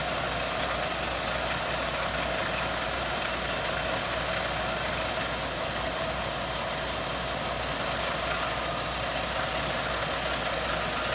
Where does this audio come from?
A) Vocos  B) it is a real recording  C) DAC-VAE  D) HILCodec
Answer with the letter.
B